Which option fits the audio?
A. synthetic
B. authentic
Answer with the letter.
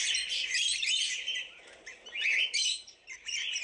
A